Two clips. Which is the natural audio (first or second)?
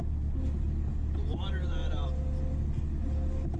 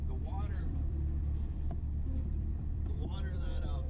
first